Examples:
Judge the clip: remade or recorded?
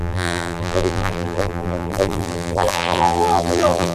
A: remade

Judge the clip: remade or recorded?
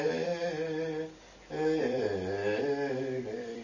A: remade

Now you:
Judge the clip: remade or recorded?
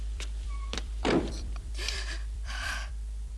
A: remade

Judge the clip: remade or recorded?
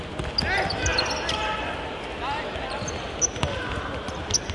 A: recorded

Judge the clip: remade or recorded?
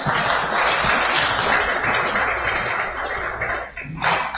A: recorded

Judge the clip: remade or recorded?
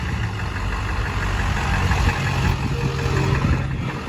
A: recorded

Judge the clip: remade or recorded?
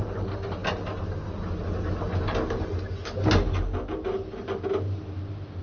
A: recorded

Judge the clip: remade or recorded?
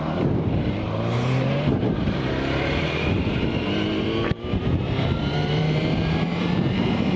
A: remade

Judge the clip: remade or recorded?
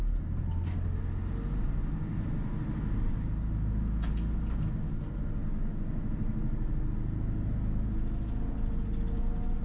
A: recorded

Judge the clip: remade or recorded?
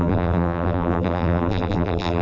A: remade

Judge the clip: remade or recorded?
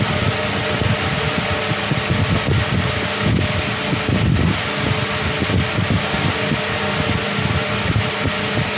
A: recorded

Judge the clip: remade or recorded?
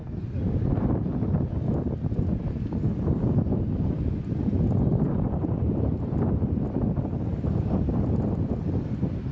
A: recorded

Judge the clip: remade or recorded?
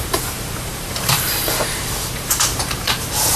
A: remade